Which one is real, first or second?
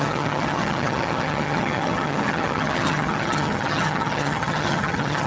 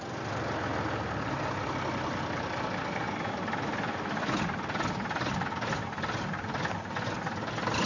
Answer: second